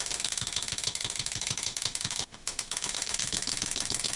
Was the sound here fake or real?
fake